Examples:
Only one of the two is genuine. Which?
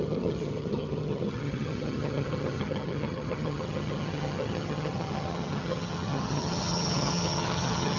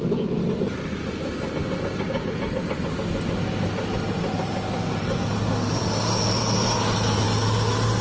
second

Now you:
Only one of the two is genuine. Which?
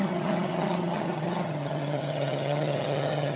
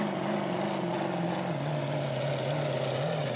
second